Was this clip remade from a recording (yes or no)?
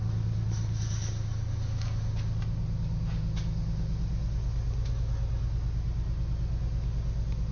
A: no